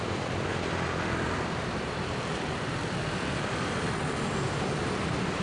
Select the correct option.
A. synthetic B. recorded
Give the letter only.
A